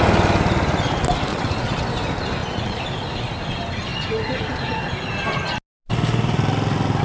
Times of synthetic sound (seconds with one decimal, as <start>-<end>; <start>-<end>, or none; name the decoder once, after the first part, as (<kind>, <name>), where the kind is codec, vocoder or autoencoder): 1.3-1.8 (vocoder, Vocos); 2.4-3.3